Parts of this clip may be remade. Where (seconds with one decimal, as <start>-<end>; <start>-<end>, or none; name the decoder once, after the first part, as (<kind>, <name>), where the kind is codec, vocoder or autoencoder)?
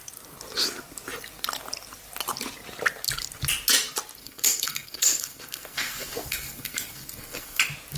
4.2-7.6 (codec, SNAC)